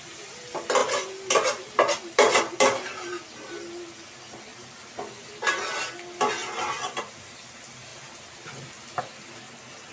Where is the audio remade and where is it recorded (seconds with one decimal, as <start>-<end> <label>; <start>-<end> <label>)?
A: 0.0-9.9 recorded